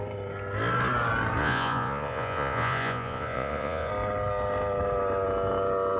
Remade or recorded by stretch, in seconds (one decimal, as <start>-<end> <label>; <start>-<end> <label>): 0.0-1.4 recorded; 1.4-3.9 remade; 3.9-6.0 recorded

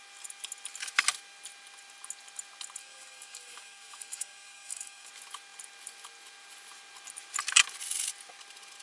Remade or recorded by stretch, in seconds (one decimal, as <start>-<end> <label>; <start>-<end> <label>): 0.0-2.8 recorded; 2.8-5.1 remade; 5.1-8.8 recorded

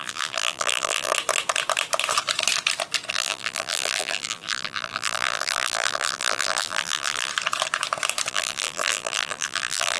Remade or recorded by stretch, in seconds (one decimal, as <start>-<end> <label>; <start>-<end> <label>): 0.0-1.1 remade; 1.1-3.1 recorded; 3.1-7.3 remade; 7.3-8.3 recorded; 8.3-10.0 remade

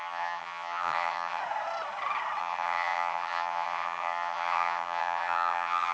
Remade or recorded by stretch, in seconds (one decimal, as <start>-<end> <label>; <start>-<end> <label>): 0.0-1.4 remade; 1.4-2.4 recorded; 2.4-5.9 remade

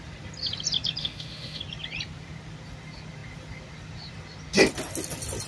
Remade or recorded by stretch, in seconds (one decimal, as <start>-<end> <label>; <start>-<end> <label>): 0.0-1.0 recorded; 1.0-1.6 remade; 1.6-5.5 recorded

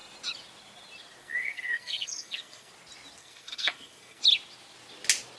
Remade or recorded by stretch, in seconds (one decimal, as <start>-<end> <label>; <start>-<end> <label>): 0.0-1.2 recorded; 1.2-2.7 remade; 2.7-3.2 recorded; 3.2-4.2 remade; 4.2-5.4 recorded

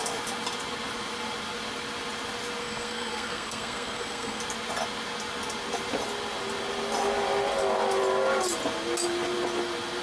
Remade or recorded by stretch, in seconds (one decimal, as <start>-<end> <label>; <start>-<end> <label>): 0.0-2.6 recorded; 2.6-4.4 remade; 4.4-10.0 recorded

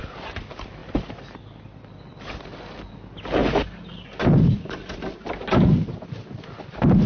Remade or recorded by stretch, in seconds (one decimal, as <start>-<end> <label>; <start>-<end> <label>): 0.0-7.1 recorded